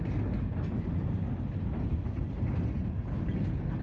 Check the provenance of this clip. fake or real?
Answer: real